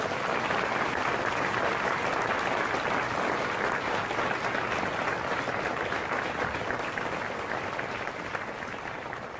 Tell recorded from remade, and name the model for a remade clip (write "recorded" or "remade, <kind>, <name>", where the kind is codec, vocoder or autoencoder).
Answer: recorded